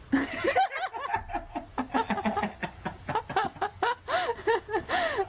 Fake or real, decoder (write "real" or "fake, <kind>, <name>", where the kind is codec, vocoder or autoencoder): real